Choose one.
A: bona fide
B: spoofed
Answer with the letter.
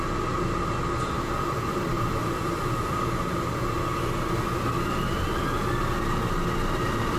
A